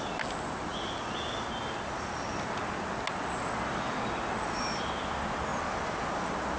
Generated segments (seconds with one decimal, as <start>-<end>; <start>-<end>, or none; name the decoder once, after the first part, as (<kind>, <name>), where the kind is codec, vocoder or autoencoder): 5.5-6.6 (vocoder, BigVGAN v2)